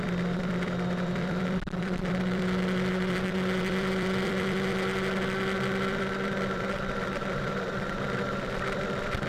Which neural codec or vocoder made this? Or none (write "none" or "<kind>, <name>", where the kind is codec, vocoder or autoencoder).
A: vocoder, BigVGAN v2